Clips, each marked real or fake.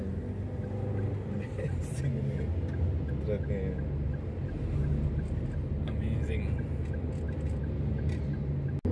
real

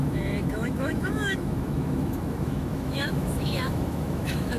fake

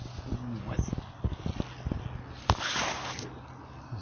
real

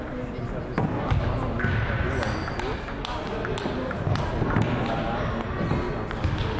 real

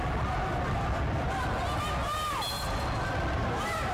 real